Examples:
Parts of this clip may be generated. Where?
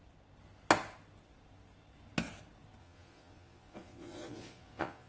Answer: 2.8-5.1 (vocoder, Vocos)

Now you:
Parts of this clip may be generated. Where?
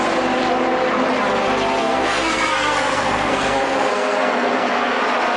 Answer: 1.8-5.0 (codec, SNAC)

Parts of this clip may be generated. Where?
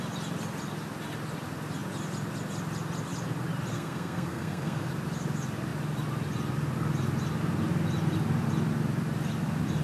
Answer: 3.7-4.9 (codec, SNAC)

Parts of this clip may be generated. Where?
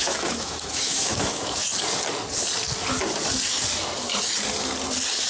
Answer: 0.0-1.7 (autoencoder, DAC-VAE)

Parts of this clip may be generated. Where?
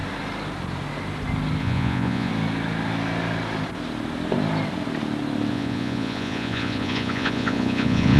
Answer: 1.6-2.3 (vocoder, Vocos); 5.5-8.2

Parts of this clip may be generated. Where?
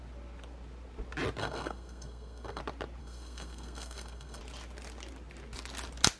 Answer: 1.4-2.6 (codec, SNAC); 3.0-4.4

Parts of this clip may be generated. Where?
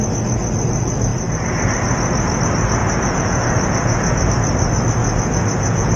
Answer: 2.8-4.3 (vocoder, Vocos); 5.0-6.0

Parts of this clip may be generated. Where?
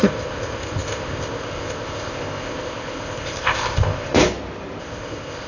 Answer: 0.0-4.2 (codec, ZipCodec); 4.8-5.5